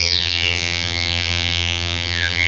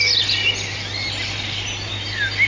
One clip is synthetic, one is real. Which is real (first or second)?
second